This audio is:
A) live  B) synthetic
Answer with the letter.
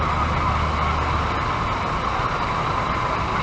A